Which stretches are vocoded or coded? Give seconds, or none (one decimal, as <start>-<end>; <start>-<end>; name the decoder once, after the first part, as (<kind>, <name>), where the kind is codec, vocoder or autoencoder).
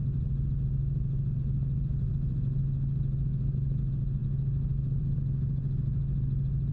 none